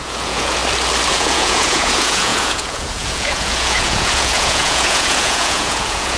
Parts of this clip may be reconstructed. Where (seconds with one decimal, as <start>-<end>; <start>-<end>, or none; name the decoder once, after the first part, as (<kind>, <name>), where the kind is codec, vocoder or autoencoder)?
0.0-0.6 (vocoder, Vocos); 1.1-6.2